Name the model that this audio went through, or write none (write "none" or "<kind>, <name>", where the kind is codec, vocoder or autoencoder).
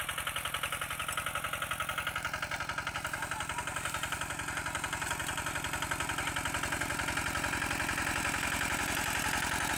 none